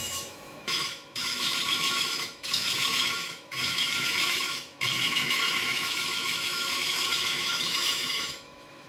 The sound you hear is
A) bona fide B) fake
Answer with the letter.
B